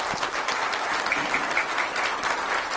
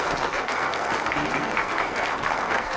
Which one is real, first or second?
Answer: first